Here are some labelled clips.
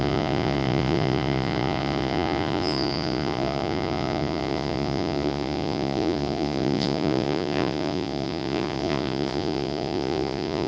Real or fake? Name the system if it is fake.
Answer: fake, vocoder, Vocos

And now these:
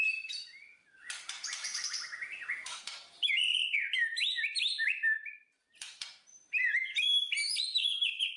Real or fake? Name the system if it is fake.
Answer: fake, vocoder, BigVGAN v2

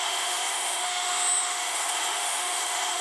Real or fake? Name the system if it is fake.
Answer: fake, autoencoder, DAC-VAE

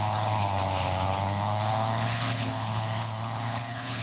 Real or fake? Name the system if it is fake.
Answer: fake, codec, HILCodec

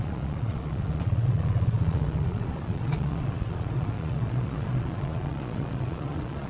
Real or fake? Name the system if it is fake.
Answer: fake, vocoder, Vocos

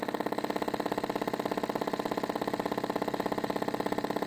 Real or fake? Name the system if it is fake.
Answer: real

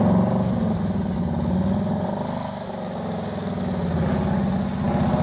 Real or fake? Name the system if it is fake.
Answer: real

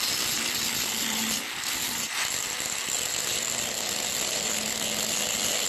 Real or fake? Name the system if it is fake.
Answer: real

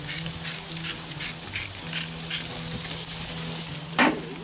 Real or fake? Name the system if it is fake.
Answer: real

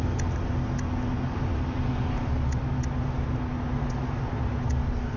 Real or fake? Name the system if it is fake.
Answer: real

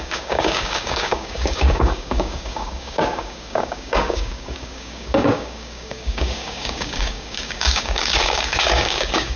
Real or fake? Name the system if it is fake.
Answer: fake, codec, DAC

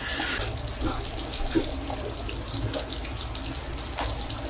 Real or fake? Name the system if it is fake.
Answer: real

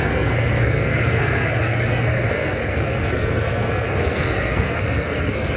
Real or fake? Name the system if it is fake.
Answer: fake, codec, SNAC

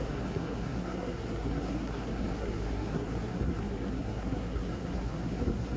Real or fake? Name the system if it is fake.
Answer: fake, codec, SNAC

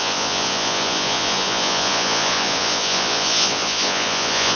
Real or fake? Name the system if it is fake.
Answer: fake, vocoder, Vocos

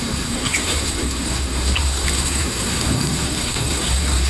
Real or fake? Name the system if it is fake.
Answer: fake, codec, SNAC